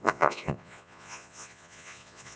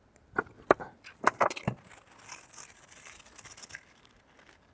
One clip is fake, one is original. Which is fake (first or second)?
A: first